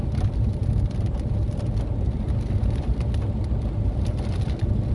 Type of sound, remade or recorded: recorded